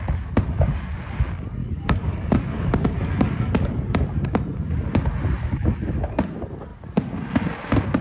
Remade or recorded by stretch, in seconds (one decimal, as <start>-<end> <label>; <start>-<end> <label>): 0.0-1.6 recorded; 1.6-4.4 remade; 4.4-8.0 recorded